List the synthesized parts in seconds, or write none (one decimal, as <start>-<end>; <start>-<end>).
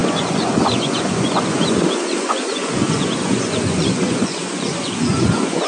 0.0-5.7